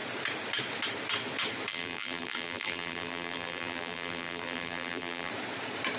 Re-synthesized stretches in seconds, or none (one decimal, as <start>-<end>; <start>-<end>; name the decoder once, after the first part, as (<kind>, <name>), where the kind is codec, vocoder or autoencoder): 1.7-5.3 (vocoder, BigVGAN v2)